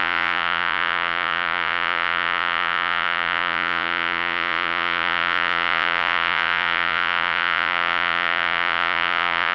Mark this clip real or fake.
fake